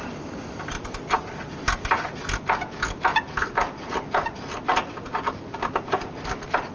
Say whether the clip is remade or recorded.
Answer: recorded